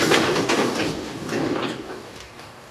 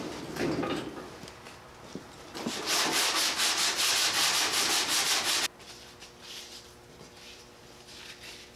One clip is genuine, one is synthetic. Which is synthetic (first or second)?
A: first